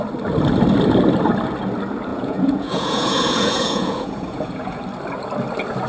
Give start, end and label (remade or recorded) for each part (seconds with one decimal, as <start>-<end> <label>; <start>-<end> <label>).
0.0-2.1 recorded; 2.1-4.8 remade; 4.8-5.9 recorded